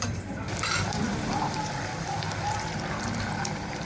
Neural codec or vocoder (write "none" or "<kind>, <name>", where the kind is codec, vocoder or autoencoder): vocoder, BigVGAN v2